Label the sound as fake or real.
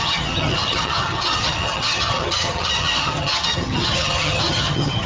fake